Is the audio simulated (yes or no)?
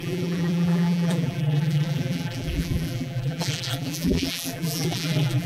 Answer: yes